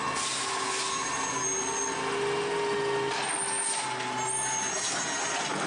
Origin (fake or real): real